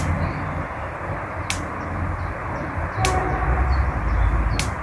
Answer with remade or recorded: recorded